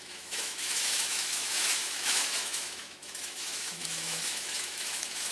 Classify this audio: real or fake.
fake